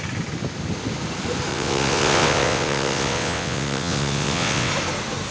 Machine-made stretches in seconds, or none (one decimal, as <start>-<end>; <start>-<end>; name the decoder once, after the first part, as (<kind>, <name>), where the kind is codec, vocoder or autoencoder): 1.5-4.7 (vocoder, WaveNeXt)